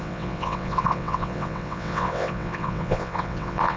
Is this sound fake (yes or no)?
yes